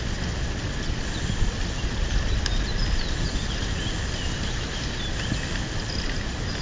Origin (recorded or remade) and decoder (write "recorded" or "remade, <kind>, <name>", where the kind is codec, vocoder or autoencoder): recorded